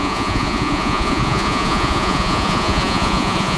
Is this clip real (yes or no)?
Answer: no